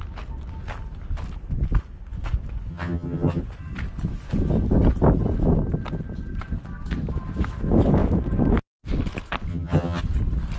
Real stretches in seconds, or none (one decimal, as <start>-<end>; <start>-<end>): 0.0-2.7; 3.4-9.5; 10.0-10.6